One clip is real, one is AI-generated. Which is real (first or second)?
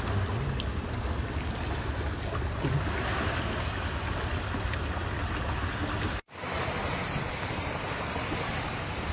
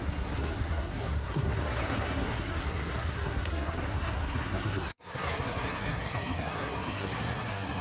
first